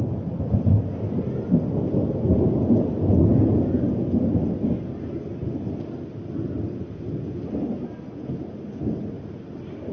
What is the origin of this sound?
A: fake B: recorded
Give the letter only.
B